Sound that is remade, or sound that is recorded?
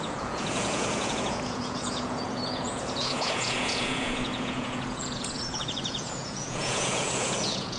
remade